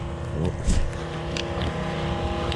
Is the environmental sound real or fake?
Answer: real